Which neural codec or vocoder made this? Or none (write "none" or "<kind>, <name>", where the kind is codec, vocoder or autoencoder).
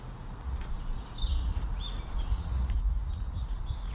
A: vocoder, Vocos